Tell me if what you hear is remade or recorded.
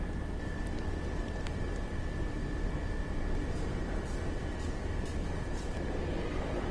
remade